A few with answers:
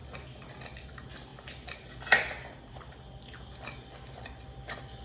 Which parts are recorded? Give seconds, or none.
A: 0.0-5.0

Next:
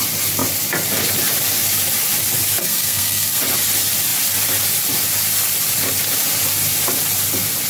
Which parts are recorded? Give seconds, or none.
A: 0.0-2.6; 3.4-7.7

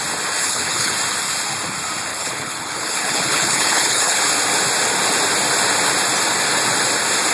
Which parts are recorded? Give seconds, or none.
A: 0.0-0.4; 0.9-2.1; 4.2-7.3